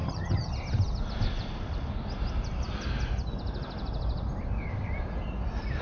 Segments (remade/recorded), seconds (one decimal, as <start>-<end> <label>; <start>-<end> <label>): 0.0-0.5 remade; 0.5-5.8 recorded